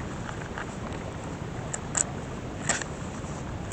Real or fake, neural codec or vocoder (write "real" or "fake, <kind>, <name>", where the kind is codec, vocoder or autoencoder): real